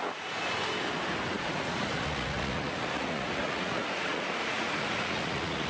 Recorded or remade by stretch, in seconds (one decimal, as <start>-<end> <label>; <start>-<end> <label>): 0.0-0.4 remade; 0.4-1.3 recorded; 1.3-5.7 remade